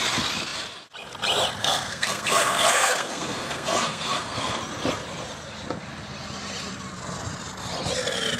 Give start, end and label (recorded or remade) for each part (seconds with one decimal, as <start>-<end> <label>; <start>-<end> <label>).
0.0-1.6 recorded; 1.6-4.6 remade; 4.6-8.4 recorded